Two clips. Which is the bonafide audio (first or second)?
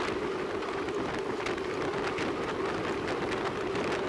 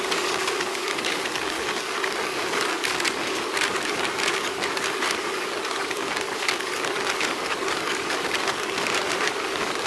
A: first